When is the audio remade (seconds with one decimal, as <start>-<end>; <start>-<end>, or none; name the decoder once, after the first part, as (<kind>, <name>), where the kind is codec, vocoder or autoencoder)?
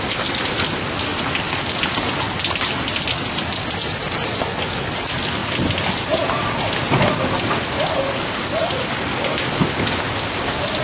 none